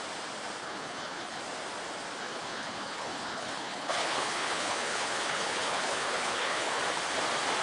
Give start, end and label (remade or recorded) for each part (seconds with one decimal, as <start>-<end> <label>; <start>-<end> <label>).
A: 0.0-0.6 recorded; 0.6-1.4 remade; 1.4-2.2 recorded; 2.2-6.8 remade; 6.8-7.6 recorded